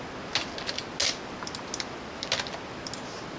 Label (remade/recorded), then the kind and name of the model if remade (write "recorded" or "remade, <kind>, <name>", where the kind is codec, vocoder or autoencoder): recorded